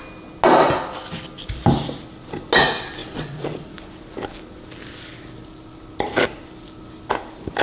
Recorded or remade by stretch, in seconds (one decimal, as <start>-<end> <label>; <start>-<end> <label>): 0.0-3.0 recorded; 3.0-3.7 remade; 3.7-7.6 recorded